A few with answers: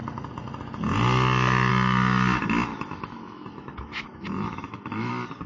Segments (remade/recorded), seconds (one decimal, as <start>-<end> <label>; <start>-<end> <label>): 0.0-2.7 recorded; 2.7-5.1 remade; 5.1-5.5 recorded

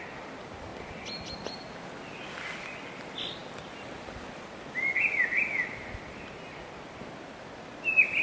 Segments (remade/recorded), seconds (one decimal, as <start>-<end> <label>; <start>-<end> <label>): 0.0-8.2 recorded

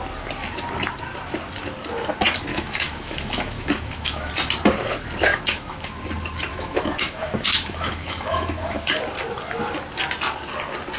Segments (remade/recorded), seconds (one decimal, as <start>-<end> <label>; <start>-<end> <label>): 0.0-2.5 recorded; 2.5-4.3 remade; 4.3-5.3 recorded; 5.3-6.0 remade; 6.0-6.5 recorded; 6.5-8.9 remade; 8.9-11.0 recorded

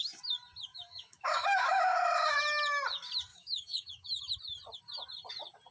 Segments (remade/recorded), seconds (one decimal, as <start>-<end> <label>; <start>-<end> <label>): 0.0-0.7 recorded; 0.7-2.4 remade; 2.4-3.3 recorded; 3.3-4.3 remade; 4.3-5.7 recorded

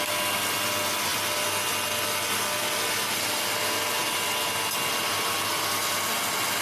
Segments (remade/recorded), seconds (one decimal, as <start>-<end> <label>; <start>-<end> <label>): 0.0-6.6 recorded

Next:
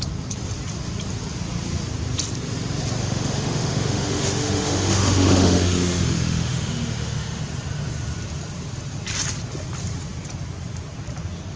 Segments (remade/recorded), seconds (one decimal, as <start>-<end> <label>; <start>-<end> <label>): 0.0-3.0 recorded; 3.0-7.4 remade; 7.4-11.6 recorded